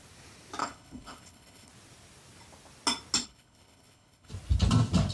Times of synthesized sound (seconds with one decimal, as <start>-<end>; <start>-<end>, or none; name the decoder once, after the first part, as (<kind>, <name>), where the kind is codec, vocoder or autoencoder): 0.6-1.7 (codec, HILCodec); 3.2-4.3